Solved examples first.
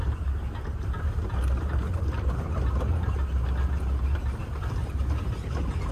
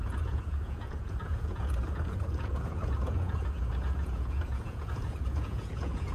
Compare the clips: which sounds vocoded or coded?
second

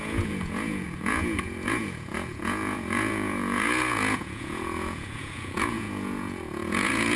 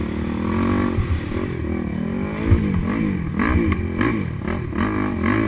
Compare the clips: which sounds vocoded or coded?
first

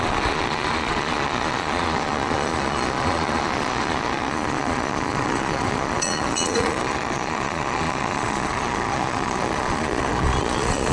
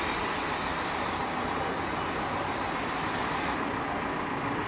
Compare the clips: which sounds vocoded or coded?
first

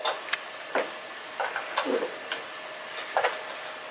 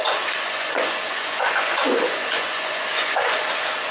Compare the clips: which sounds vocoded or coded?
second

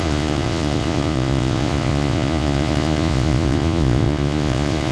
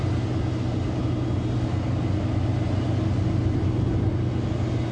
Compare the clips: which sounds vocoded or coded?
first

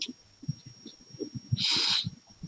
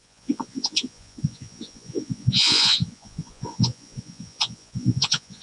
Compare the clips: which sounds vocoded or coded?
second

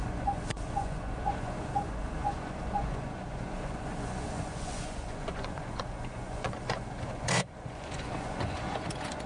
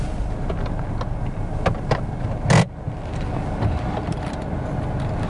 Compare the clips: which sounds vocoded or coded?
first